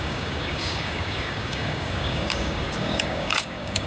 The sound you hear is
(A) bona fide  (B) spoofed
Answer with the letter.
B